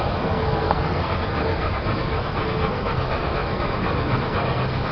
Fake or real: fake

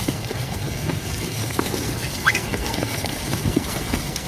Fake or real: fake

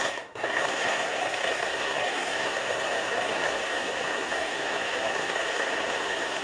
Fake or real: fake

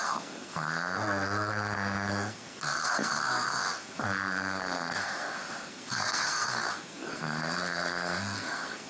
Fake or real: fake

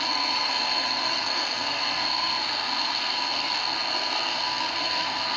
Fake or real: fake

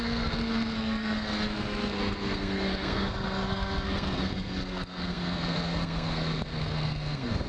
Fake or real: fake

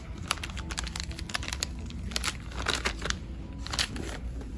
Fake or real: real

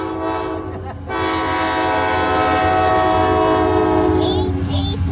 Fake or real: real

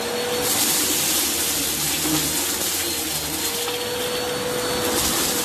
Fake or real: real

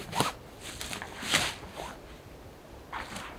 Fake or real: real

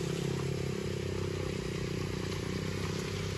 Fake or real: real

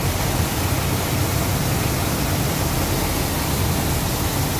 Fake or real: real